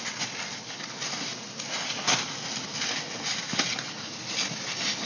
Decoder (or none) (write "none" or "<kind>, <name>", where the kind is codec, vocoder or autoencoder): none